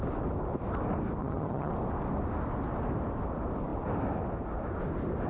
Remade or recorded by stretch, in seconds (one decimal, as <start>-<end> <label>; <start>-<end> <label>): 0.0-1.2 recorded; 1.2-1.7 remade; 1.7-5.3 recorded

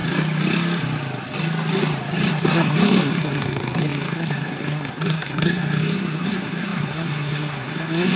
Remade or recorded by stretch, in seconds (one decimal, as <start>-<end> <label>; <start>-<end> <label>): 0.0-2.3 recorded; 2.3-8.2 remade